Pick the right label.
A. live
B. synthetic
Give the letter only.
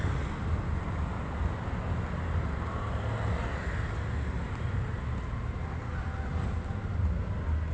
A